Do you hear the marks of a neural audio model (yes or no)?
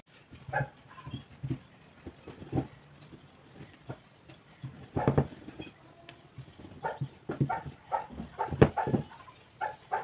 no